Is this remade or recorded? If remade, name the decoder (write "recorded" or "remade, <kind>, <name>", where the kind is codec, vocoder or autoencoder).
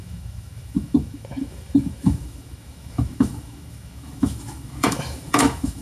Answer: remade, autoencoder, DAC-VAE